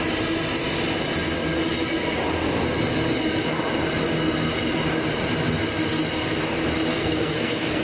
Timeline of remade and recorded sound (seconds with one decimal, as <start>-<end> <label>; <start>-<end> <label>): 0.0-6.9 recorded; 6.9-7.8 remade